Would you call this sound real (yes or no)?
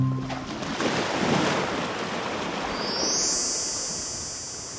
yes